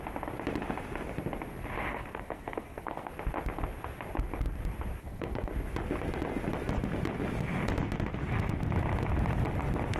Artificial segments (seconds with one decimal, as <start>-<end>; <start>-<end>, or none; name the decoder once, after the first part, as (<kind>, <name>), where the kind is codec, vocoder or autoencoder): 1.9-3.1 (codec, SNAC); 5.0-5.5